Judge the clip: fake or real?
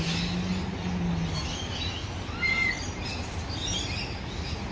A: real